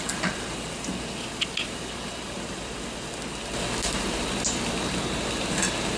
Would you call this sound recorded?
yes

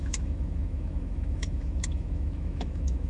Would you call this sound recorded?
no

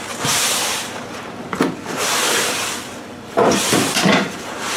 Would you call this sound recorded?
no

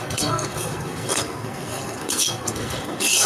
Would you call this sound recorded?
no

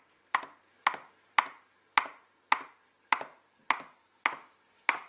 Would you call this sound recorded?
yes